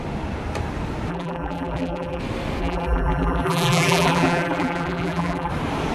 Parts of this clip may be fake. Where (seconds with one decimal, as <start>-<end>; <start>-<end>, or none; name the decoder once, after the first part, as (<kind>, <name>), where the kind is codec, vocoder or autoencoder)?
1.1-2.2 (vocoder, BigVGAN v2); 2.6-5.5